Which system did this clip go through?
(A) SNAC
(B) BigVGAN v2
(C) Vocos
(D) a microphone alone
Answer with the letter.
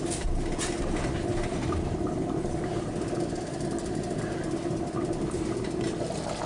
D